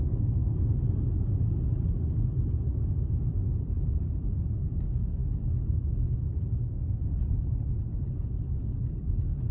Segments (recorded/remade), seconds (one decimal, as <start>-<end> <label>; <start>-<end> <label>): 0.0-9.5 recorded

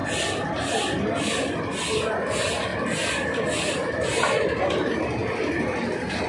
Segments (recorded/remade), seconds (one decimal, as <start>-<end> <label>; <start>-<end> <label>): 0.0-6.3 recorded

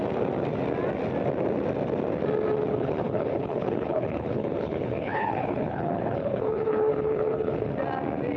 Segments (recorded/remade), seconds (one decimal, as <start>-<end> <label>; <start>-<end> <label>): 0.0-2.7 recorded; 2.7-7.7 remade; 7.7-8.4 recorded

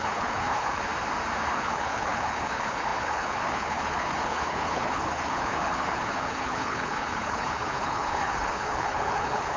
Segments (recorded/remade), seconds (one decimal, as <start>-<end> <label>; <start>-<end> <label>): 0.0-0.9 remade; 0.9-1.5 recorded; 1.5-9.6 remade

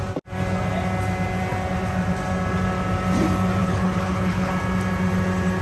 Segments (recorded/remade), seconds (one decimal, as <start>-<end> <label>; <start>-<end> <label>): 0.0-3.6 recorded; 3.6-4.5 remade; 4.5-5.6 recorded

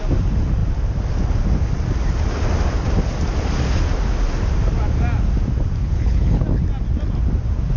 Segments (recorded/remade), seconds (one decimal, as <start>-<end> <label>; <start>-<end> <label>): 0.0-5.8 recorded; 5.8-6.4 remade; 6.4-7.8 recorded